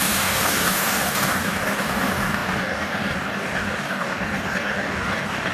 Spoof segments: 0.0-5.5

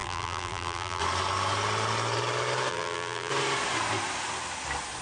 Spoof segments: 0.0-1.0; 2.7-3.3